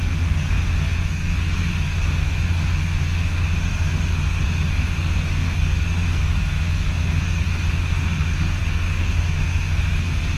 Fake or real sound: fake